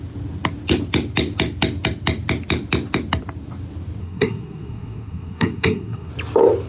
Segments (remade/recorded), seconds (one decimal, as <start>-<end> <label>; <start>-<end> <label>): 0.0-4.0 recorded; 4.0-6.1 remade; 6.1-6.7 recorded